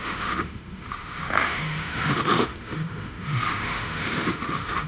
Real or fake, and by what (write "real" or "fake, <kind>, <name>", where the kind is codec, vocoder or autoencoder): fake, autoencoder, DAC-VAE